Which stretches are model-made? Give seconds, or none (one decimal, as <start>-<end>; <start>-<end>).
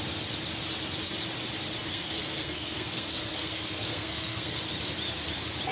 1.9-4.6